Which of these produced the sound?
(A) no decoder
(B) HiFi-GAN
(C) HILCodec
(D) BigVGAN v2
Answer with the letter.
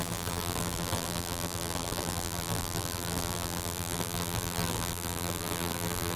D